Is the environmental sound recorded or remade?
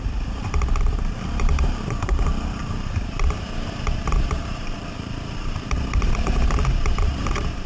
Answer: remade